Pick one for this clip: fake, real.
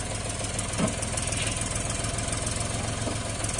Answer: real